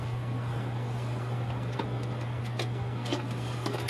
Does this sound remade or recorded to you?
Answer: remade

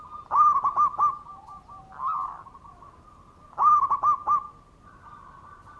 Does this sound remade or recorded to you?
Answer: recorded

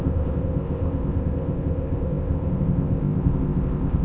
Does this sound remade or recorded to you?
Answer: remade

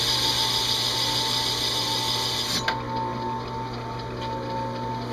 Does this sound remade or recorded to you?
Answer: recorded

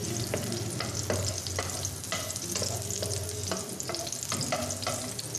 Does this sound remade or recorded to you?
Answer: recorded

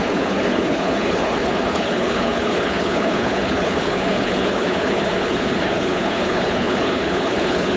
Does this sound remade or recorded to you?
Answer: remade